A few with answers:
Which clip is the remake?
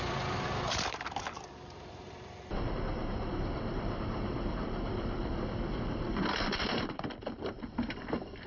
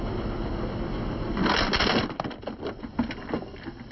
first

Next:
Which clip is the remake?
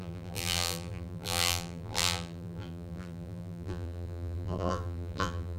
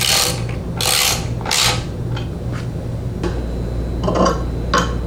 first